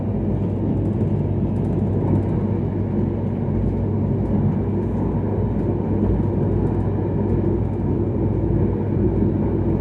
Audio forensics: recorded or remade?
recorded